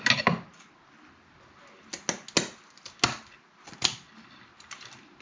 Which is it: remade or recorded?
recorded